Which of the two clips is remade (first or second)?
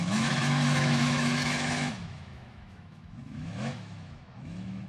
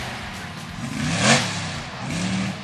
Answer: first